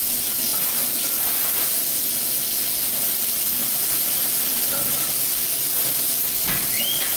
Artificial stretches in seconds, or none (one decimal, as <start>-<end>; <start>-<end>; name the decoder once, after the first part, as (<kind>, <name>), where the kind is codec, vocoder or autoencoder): none